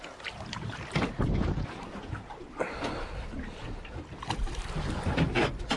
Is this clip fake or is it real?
real